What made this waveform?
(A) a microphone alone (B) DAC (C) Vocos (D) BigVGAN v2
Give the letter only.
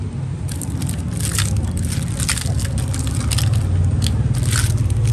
A